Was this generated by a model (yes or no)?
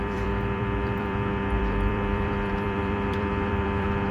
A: yes